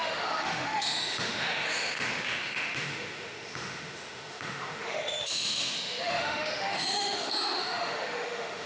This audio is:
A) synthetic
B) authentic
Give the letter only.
A